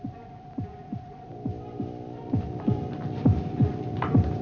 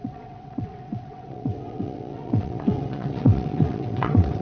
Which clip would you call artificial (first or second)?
second